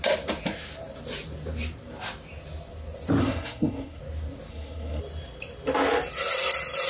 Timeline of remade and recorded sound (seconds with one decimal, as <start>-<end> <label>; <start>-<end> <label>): 0.0-3.2 recorded; 3.2-4.0 remade; 4.0-4.5 recorded; 4.5-5.0 remade; 5.0-6.9 recorded